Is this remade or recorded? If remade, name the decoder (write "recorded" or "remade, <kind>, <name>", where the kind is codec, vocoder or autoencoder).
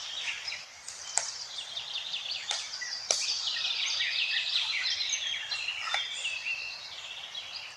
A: remade, vocoder, BigVGAN v2